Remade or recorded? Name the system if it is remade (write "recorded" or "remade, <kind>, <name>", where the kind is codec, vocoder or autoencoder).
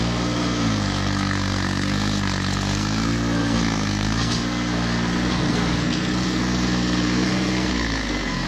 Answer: remade, codec, SNAC